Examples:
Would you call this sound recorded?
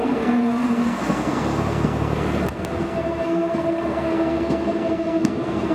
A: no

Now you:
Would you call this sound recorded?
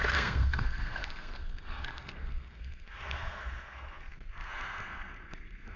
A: no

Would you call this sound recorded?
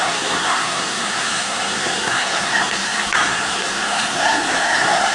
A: no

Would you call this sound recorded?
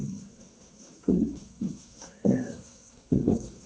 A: no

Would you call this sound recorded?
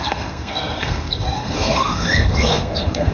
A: no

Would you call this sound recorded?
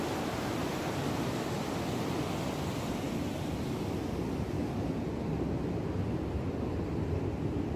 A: yes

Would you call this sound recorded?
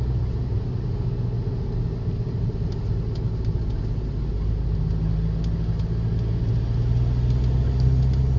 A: yes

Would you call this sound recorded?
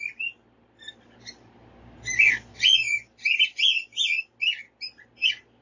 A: yes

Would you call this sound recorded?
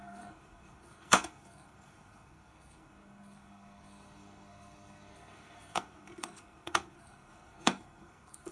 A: no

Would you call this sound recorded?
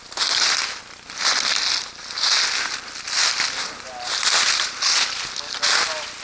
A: yes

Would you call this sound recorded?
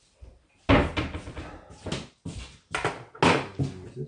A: yes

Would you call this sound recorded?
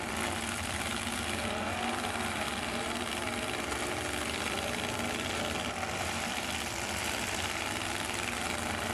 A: yes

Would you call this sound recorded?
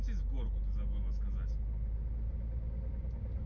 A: yes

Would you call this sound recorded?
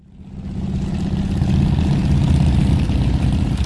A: yes